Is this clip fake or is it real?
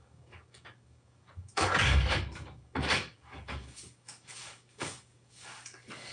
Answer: fake